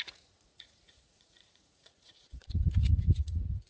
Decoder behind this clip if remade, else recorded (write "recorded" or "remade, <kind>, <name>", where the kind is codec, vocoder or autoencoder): remade, vocoder, Vocos